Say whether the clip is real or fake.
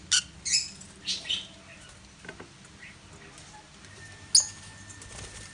real